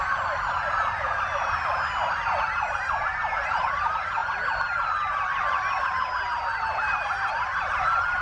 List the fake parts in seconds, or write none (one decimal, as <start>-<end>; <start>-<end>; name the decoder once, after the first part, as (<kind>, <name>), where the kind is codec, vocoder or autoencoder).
none

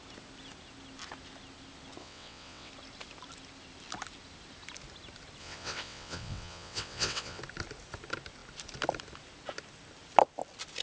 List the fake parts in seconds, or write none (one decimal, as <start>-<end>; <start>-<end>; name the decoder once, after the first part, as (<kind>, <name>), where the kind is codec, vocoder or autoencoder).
2.0-2.7 (vocoder, WaveNeXt); 5.4-7.4

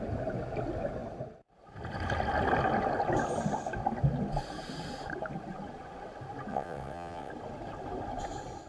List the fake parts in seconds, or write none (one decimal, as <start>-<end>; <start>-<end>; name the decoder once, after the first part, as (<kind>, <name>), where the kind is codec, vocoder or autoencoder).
6.5-7.3 (vocoder, WaveNeXt)

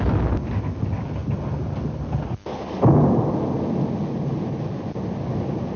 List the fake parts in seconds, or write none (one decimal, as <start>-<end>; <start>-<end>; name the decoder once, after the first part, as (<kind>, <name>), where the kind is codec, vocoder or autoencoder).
none

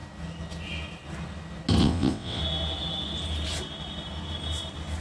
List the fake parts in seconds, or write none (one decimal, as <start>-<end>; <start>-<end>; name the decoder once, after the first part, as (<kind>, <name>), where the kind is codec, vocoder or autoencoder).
1.8-2.4 (vocoder, WaveNeXt)

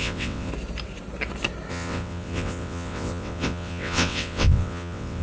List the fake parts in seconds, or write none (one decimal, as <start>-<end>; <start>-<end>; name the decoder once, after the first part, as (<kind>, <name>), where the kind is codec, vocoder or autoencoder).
0.0-0.5 (vocoder, WaveNeXt); 1.7-5.2

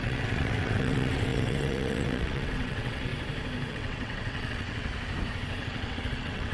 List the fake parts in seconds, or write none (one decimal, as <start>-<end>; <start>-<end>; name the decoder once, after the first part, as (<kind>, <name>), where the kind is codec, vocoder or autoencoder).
0.0-3.1 (vocoder, WaveNeXt); 3.7-4.9; 5.6-6.5

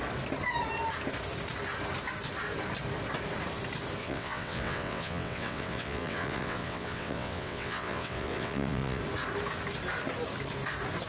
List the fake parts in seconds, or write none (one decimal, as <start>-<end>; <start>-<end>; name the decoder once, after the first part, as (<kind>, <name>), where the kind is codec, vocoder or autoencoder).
4.0-9.0 (vocoder, WaveNeXt)